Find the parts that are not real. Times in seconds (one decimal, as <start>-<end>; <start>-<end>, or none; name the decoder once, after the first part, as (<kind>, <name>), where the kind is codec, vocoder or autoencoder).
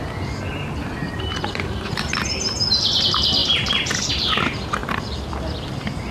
1.3-3.0 (vocoder, BigVGAN v2)